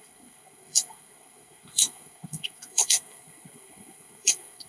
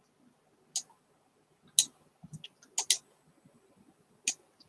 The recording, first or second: second